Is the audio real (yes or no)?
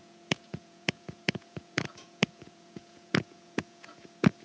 no